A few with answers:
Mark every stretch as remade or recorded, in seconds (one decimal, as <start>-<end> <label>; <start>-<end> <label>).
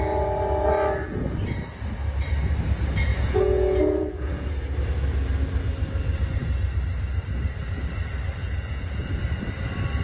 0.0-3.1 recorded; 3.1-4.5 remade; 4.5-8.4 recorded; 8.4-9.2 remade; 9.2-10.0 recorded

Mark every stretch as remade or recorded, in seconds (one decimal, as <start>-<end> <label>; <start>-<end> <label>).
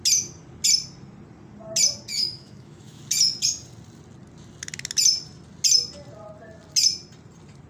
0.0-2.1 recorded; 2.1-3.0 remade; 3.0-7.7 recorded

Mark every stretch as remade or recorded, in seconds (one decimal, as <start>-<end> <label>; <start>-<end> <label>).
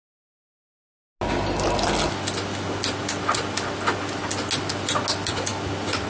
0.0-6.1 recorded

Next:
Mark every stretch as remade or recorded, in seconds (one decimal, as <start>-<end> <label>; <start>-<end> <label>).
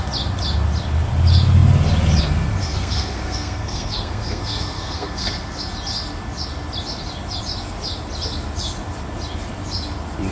0.0-2.6 recorded; 2.6-5.6 remade; 5.6-10.3 recorded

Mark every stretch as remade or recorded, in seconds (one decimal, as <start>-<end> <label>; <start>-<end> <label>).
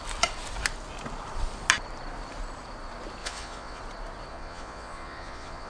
0.0-3.2 recorded; 3.2-3.8 remade; 3.8-4.3 recorded; 4.3-5.7 remade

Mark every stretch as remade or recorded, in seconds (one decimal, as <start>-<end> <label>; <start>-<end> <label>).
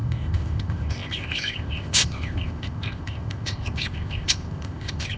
0.0-5.2 remade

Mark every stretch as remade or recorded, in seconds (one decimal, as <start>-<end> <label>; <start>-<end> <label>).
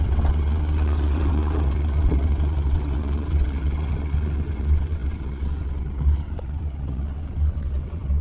0.0-8.2 remade